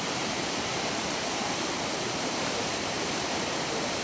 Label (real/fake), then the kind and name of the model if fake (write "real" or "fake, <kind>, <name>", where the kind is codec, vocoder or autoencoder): fake, vocoder, BigVGAN v2